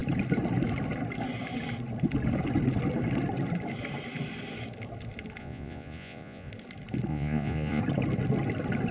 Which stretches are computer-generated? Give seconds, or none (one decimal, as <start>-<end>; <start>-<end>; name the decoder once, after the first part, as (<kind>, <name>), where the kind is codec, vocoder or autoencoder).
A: 5.4-6.5 (vocoder, Vocos); 7.1-7.8